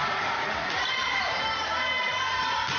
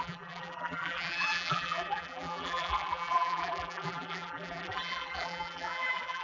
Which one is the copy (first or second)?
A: second